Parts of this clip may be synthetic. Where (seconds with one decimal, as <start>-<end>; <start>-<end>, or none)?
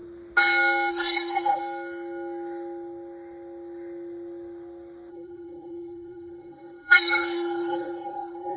0.9-1.6; 5.1-8.6